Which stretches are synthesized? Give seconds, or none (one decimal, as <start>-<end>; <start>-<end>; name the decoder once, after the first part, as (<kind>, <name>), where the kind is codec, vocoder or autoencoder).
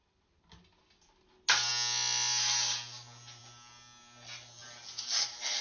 none